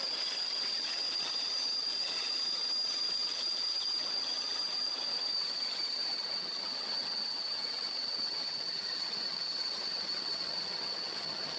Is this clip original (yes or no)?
no